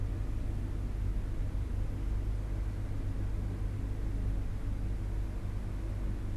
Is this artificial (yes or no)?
no